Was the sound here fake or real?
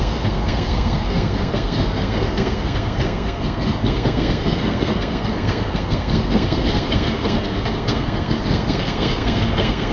fake